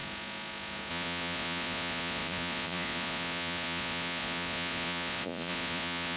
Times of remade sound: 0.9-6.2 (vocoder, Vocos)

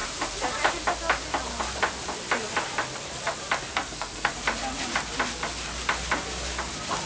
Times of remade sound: 3.7-4.3 (codec, SNAC)